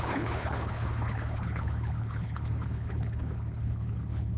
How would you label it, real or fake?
fake